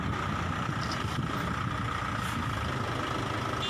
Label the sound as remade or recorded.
recorded